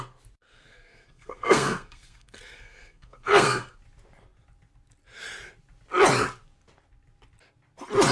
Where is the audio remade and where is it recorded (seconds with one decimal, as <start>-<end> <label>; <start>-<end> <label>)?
0.0-0.4 recorded; 0.4-3.8 remade; 3.8-8.1 recorded

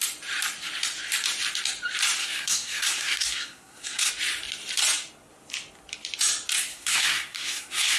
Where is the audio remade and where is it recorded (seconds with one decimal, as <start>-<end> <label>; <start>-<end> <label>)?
0.0-2.2 recorded; 2.2-4.1 remade; 4.1-6.7 recorded; 6.7-8.0 remade